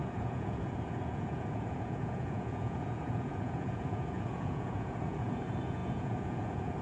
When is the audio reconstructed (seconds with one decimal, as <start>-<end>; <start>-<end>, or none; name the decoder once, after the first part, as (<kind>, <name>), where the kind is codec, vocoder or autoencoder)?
0.0-6.8 (vocoder, Vocos)